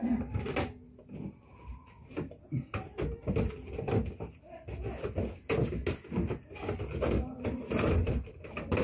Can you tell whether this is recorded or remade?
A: recorded